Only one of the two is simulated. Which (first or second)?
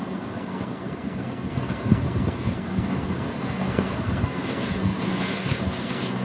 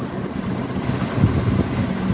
first